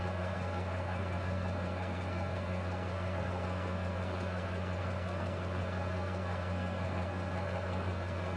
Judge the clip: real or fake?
fake